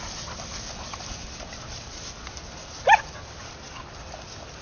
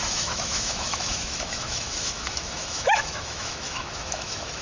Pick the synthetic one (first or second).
second